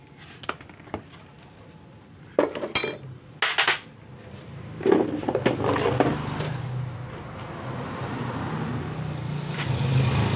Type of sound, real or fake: real